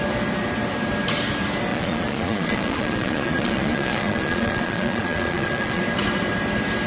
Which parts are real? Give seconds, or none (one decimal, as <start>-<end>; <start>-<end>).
0.0-1.7; 5.8-6.9